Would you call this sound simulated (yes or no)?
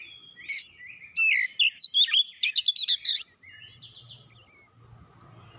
no